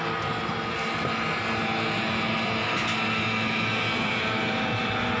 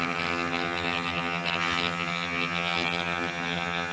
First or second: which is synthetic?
second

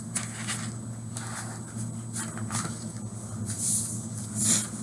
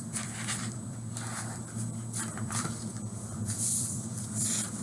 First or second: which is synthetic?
second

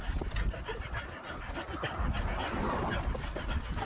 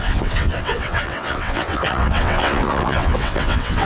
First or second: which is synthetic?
second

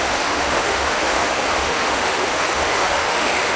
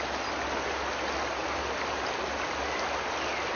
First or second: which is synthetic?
first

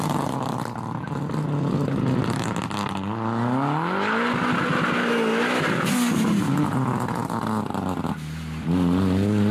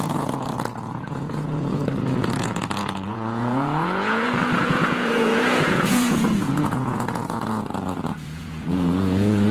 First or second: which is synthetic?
second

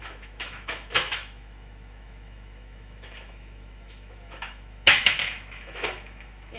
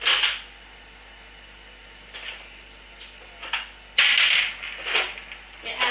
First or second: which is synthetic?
first